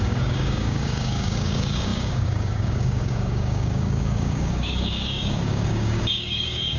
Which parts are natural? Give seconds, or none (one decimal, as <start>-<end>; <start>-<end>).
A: none